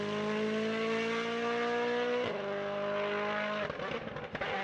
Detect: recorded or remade recorded